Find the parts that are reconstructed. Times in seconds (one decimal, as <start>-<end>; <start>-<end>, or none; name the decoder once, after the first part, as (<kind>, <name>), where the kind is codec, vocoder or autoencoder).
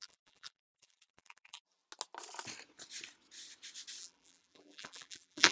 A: 0.0-1.8 (vocoder, BigVGAN v2); 4.0-5.5